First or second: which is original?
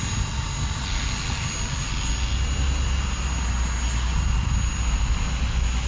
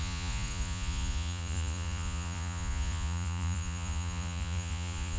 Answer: first